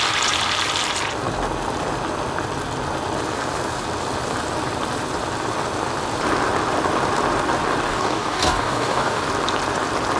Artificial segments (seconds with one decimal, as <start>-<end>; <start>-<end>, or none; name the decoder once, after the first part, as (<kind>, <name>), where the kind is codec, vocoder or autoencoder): 7.9-9.2 (codec, DAC)